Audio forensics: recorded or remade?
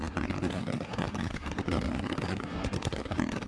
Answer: remade